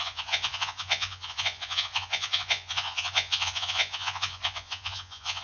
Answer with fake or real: fake